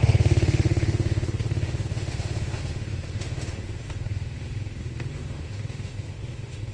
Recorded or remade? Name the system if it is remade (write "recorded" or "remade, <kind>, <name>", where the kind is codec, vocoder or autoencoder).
remade, autoencoder, DAC-VAE